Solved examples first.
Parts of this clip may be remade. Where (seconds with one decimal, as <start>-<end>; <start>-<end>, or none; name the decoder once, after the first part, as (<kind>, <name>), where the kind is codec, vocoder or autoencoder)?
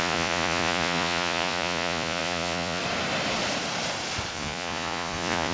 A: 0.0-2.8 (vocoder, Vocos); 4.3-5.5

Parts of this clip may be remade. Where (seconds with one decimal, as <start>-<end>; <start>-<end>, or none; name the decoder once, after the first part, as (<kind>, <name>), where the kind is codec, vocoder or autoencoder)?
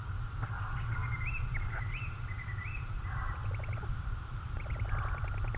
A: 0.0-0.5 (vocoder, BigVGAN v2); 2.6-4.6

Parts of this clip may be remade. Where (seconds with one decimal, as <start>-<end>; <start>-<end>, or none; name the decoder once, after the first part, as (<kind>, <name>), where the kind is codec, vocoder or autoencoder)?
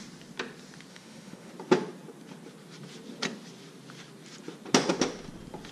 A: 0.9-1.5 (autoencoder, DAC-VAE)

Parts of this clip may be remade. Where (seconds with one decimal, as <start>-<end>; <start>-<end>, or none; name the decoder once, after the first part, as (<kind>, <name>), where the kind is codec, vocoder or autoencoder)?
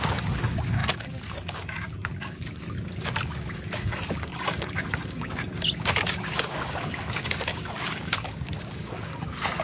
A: 0.0-9.6 (codec, DAC)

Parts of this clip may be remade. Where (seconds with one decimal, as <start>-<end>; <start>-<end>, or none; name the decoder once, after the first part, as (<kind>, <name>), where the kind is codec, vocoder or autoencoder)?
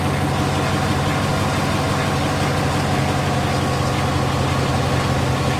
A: none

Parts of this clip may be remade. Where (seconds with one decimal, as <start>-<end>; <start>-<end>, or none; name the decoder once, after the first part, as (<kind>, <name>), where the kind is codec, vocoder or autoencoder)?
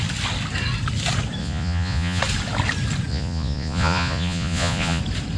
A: 1.4-2.2 (vocoder, Vocos); 3.1-5.0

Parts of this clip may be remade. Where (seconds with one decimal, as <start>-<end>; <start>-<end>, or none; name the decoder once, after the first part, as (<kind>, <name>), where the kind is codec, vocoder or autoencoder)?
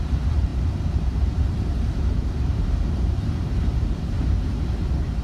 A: 0.0-5.2 (vocoder, BigVGAN v2)